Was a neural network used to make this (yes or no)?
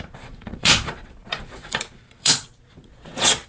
yes